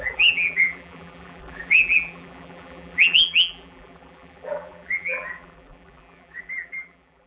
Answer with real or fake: fake